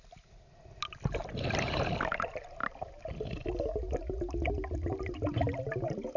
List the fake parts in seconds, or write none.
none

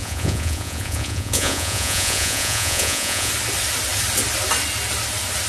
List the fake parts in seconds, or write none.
0.0-3.3 (vocoder, Vocos)

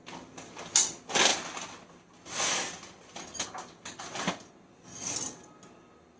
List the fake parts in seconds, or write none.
none